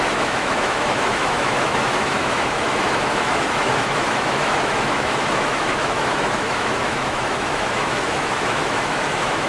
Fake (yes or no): yes